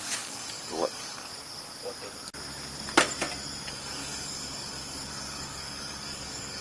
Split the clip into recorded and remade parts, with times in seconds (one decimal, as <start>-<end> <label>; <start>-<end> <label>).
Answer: 0.0-1.3 remade; 1.3-3.7 recorded; 3.7-6.6 remade